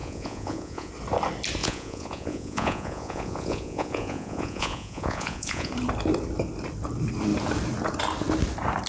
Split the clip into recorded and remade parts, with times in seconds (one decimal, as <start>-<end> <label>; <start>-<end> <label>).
0.0-0.9 remade; 0.9-1.6 recorded; 1.6-5.7 remade; 5.7-8.9 recorded